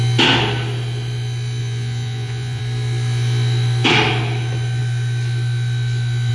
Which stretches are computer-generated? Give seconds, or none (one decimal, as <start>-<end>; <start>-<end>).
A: 1.6-2.6